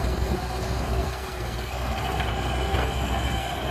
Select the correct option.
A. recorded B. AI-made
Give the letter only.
B